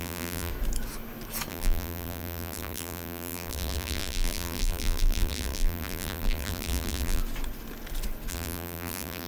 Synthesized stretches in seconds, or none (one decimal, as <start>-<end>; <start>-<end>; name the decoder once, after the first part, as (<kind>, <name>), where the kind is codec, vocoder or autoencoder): 0.0-0.5 (vocoder, BigVGAN v2); 1.5-7.2; 8.3-9.3